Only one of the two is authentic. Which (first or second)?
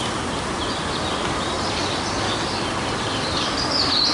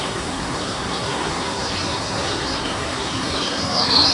first